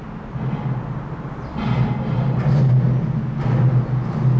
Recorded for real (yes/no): yes